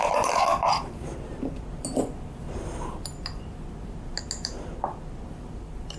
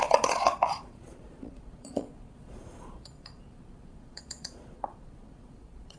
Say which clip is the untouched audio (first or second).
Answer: first